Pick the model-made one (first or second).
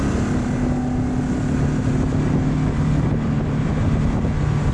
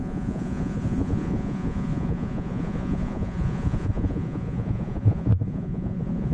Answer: second